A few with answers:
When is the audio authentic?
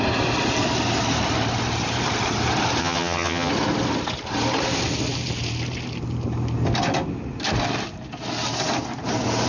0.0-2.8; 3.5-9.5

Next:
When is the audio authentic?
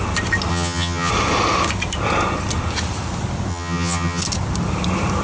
0.0-0.5; 1.1-3.5; 4.2-5.2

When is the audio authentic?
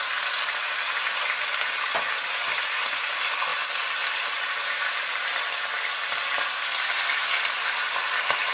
0.0-8.5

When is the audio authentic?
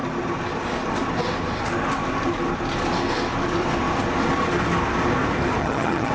0.0-5.6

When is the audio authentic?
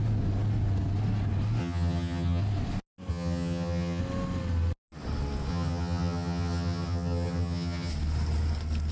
0.0-1.6; 2.4-3.1; 4.0-5.5; 7.9-8.9